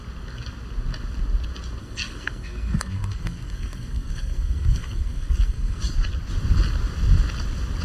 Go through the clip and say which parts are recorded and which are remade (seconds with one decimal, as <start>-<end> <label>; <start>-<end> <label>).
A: 0.0-1.8 recorded; 1.8-5.8 remade; 5.8-7.8 recorded